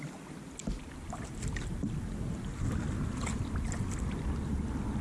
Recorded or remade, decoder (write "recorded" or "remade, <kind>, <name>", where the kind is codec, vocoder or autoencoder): recorded